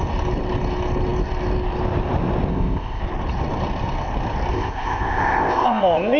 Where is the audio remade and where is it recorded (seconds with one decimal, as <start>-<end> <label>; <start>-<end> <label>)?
0.0-2.5 recorded; 2.5-3.0 remade; 3.0-4.5 recorded; 4.5-6.2 remade